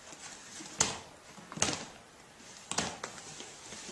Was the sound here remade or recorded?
recorded